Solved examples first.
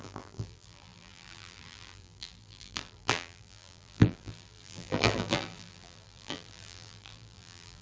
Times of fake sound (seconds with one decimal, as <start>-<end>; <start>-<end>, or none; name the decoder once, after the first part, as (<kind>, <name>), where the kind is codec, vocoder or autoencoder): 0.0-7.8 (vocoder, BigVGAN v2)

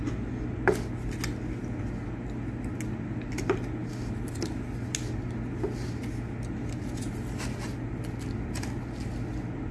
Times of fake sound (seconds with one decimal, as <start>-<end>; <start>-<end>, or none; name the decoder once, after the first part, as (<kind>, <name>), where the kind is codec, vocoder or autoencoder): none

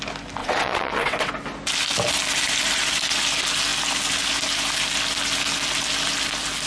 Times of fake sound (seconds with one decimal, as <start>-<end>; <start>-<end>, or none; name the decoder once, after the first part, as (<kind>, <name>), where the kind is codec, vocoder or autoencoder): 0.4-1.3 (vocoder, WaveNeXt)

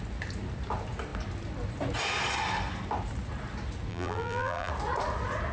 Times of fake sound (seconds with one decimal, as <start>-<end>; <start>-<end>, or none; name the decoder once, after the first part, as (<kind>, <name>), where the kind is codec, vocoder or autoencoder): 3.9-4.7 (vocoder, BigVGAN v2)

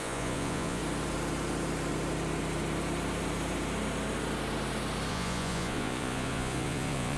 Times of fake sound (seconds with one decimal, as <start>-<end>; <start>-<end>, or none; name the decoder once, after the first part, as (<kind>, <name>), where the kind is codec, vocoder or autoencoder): 0.0-0.8 (vocoder, Vocos); 5.1-7.2

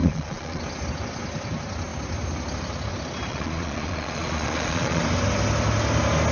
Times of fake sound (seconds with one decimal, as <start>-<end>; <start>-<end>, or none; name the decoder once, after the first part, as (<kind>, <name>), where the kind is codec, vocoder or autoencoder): 0.0-0.6 (vocoder, Vocos); 3.3-5.0

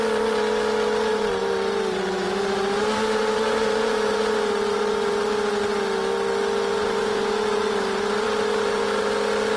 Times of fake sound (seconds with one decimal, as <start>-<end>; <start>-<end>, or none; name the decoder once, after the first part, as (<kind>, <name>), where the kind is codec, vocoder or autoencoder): 1.1-5.2 (vocoder, BigVGAN v2); 6.7-9.1

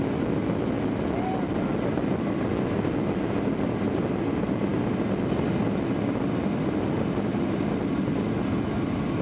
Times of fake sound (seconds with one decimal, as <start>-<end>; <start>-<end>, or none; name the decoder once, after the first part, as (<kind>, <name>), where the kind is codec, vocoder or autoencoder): none